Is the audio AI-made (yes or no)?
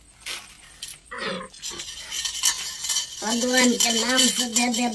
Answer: no